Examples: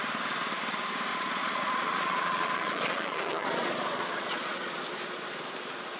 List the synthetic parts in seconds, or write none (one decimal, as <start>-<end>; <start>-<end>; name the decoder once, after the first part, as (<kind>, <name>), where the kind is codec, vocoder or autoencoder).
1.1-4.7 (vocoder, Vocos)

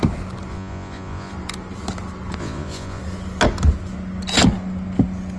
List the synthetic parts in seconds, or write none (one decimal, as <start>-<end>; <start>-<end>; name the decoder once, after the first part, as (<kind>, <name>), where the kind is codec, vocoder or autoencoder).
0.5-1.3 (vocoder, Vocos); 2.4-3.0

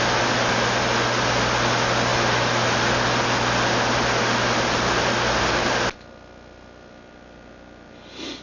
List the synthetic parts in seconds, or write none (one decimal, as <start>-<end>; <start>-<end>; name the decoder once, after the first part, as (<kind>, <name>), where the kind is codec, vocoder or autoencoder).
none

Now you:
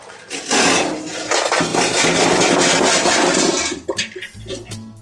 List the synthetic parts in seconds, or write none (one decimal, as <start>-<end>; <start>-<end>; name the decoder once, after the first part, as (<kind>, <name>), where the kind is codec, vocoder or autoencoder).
none

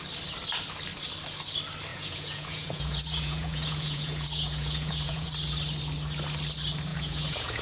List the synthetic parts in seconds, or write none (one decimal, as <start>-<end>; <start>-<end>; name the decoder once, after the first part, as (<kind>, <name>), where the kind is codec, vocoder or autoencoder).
1.9-5.3 (vocoder, Vocos); 6.9-7.6

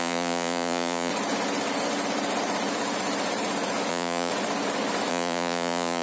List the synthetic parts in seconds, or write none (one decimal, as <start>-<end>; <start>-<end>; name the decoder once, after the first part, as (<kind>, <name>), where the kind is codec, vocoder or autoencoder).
0.0-1.1 (vocoder, Vocos); 3.9-4.3; 5.1-6.0

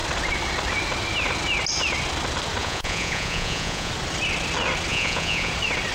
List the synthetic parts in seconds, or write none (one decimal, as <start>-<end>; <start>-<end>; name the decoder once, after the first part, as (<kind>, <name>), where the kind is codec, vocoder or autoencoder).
2.6-3.9 (vocoder, Vocos); 4.9-5.5

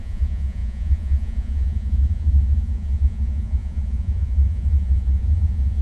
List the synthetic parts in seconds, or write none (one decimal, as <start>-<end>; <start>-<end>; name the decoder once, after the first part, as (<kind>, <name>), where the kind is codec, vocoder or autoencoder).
0.0-5.8 (vocoder, Vocos)